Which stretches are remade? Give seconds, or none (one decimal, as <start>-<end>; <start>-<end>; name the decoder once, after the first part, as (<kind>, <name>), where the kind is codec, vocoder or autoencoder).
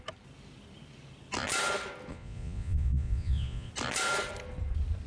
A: 2.1-3.7 (vocoder, Vocos)